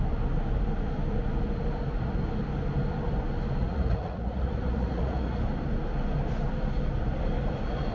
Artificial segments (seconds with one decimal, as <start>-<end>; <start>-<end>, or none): 3.6-5.4